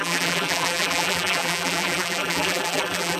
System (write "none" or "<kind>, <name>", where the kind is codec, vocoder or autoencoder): vocoder, BigVGAN v2